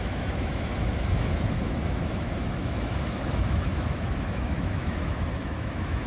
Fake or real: fake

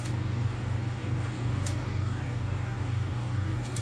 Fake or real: fake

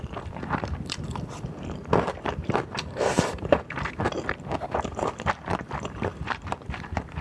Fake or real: fake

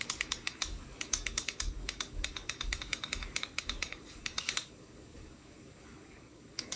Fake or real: fake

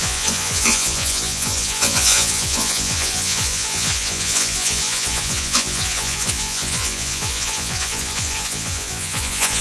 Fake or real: fake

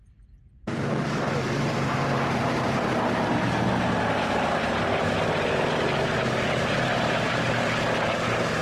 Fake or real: fake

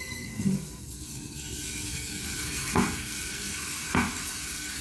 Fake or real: fake